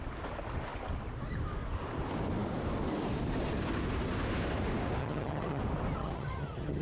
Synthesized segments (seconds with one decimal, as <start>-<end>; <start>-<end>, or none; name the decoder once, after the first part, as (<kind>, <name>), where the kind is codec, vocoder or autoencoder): 5.0-5.6 (vocoder, HiFi-GAN); 6.0-6.8

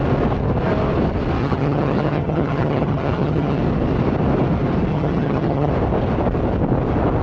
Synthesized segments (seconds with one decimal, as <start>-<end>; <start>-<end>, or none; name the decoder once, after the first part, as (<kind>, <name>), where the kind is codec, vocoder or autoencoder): 1.4-3.6 (vocoder, HiFi-GAN); 4.9-5.7

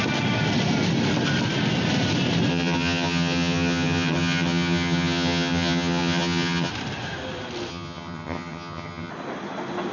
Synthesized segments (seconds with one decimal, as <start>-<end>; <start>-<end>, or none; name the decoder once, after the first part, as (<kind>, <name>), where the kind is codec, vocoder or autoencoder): 2.5-6.7 (vocoder, HiFi-GAN); 7.7-9.1

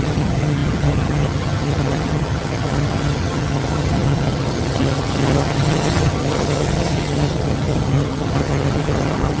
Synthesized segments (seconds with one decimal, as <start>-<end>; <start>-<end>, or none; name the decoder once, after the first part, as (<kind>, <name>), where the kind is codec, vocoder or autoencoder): 0.0-9.4 (vocoder, HiFi-GAN)

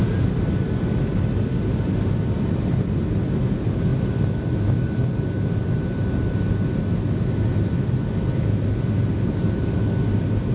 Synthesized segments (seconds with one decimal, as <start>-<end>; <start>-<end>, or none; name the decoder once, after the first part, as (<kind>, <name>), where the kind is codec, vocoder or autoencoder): none

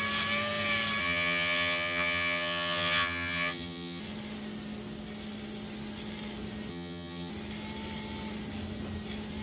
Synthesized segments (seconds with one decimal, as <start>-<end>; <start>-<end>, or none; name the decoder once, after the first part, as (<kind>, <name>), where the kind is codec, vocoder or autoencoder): 1.0-4.0 (vocoder, HiFi-GAN); 6.7-7.3